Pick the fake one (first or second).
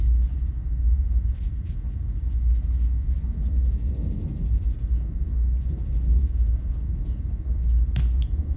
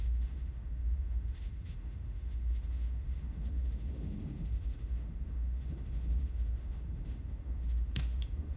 second